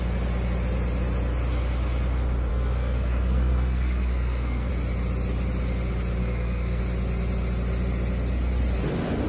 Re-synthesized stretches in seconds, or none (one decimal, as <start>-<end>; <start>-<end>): 2.5-4.7; 6.2-6.8